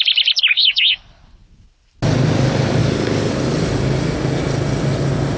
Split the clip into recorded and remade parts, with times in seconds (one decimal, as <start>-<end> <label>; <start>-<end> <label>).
0.0-0.5 recorded; 0.5-1.0 remade; 1.0-2.8 recorded; 2.8-3.3 remade; 3.3-5.4 recorded